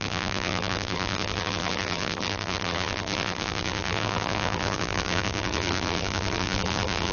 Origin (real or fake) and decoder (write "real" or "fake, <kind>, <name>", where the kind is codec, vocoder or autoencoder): fake, vocoder, BigVGAN v2